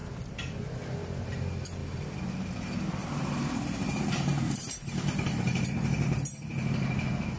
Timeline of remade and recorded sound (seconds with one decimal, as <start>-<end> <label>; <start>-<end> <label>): 0.0-0.8 remade; 0.8-1.8 recorded; 1.8-2.3 remade; 2.3-3.0 recorded; 3.0-6.8 remade; 6.8-7.4 recorded